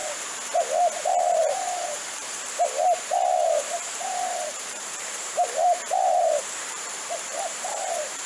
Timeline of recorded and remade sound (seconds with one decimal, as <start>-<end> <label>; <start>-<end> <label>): 0.0-1.1 recorded; 1.1-8.3 remade